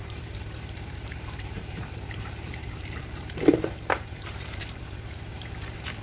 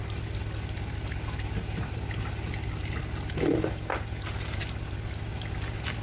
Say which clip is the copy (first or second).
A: first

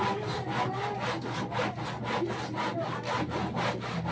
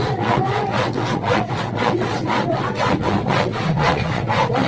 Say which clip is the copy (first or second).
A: second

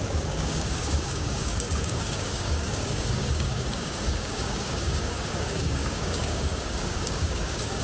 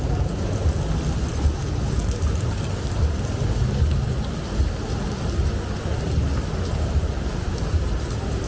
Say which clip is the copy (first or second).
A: first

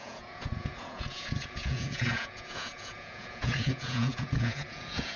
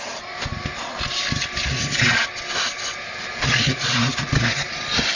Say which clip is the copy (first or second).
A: first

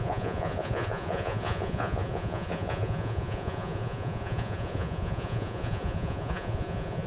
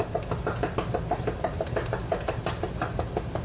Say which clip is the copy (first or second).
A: first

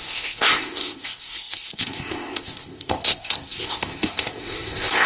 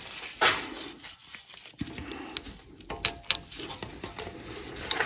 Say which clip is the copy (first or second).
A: first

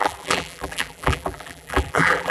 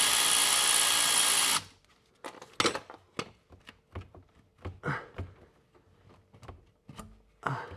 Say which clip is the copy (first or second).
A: first